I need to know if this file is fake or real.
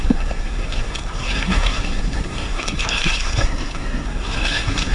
fake